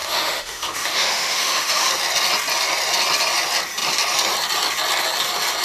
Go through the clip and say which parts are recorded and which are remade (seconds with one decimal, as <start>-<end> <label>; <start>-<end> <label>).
0.0-1.9 remade; 1.9-5.6 recorded